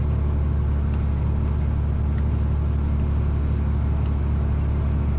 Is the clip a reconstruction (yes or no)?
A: no